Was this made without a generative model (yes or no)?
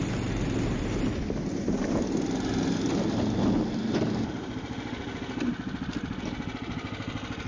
yes